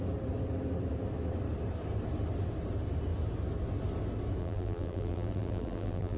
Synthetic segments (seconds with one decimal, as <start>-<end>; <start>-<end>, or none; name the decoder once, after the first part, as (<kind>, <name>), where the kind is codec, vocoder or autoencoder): 4.4-6.2 (vocoder, BigVGAN v2)